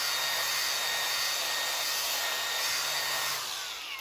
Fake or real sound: real